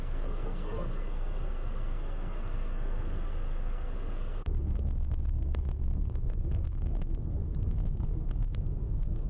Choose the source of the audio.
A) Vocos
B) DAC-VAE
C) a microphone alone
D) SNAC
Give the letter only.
D